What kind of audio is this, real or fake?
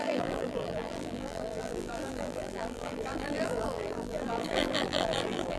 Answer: fake